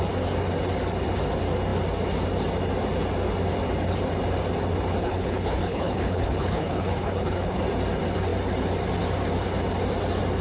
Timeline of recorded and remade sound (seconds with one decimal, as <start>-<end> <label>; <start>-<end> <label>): 0.0-5.0 recorded; 5.0-7.6 remade; 7.6-10.4 recorded